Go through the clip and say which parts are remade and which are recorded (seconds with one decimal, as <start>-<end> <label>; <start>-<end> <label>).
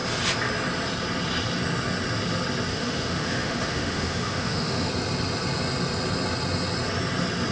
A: 0.0-2.7 recorded; 2.7-4.9 remade; 4.9-7.5 recorded